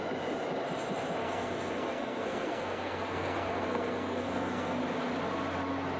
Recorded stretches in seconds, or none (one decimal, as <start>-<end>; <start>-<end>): 0.0-1.2; 4.8-6.0